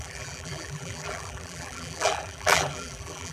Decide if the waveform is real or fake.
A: fake